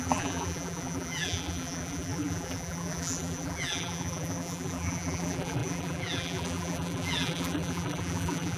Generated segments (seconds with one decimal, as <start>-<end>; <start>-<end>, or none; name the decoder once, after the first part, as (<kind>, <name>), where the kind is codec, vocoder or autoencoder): 0.0-8.6 (vocoder, BigVGAN v2)